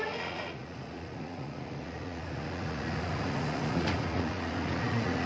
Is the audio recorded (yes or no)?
no